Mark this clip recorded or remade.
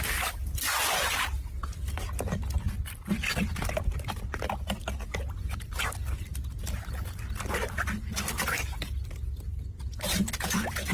recorded